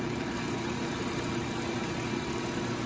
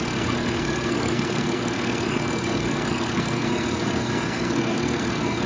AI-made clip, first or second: second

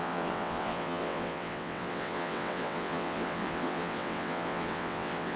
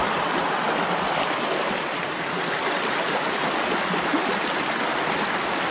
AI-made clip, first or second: first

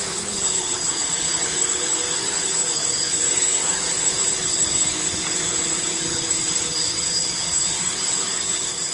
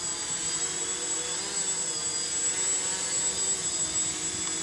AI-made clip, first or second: first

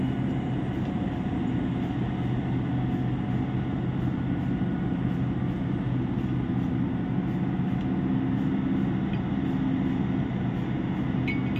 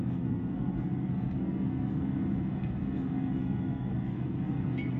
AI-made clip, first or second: second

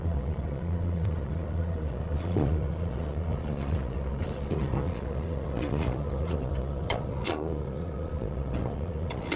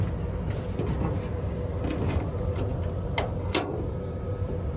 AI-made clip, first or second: first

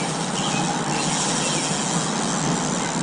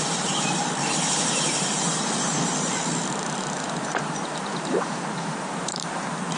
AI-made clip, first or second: second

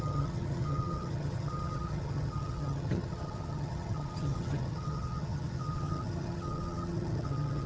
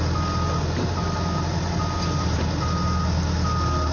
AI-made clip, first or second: first